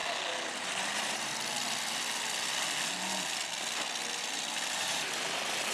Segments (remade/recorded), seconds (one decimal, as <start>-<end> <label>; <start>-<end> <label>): 0.0-0.5 recorded; 0.5-1.3 remade; 1.3-4.7 recorded; 4.7-5.7 remade